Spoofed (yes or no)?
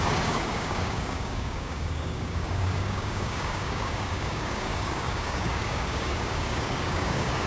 yes